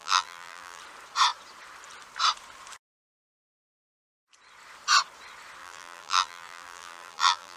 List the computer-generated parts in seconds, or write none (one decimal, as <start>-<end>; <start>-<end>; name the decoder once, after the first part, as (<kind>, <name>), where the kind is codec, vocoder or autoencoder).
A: 0.0-0.8 (vocoder, BigVGAN v2); 5.6-7.6